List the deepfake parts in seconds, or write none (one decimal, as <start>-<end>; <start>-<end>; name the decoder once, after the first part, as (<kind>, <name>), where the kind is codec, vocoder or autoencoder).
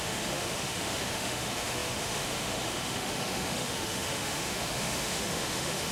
0.0-5.9 (autoencoder, DAC-VAE)